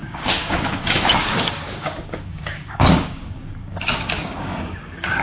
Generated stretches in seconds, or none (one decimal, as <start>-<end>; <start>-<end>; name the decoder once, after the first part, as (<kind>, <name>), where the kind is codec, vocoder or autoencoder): 0.0-5.2 (codec, DAC)